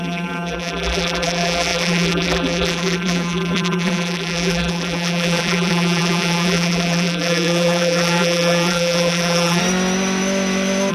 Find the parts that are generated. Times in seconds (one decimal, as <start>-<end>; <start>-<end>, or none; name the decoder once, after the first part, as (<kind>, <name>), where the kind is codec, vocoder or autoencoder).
0.0-9.6 (vocoder, BigVGAN v2)